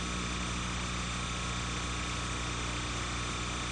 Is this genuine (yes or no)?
yes